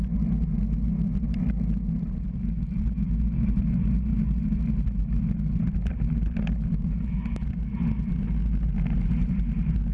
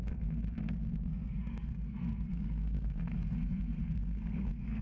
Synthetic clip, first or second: second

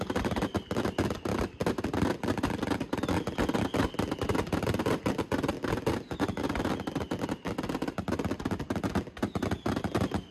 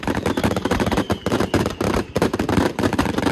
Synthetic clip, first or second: second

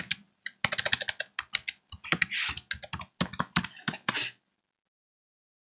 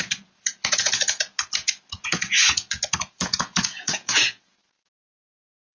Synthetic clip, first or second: second